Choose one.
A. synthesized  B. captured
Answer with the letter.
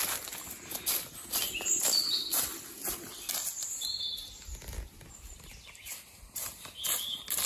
B